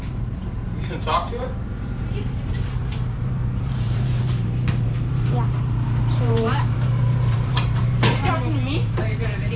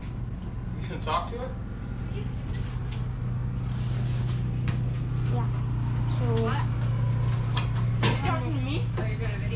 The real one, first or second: second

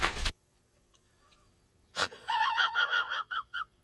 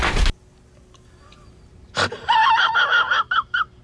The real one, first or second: second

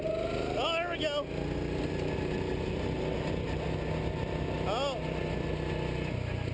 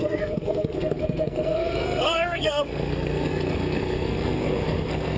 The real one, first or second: first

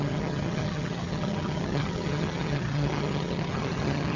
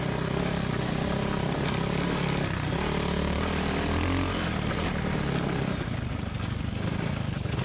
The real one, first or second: second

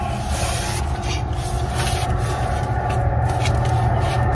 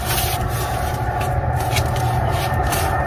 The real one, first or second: first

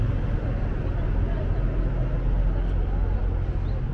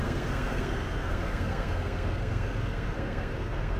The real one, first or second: first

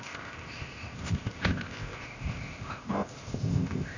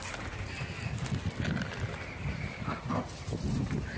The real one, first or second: second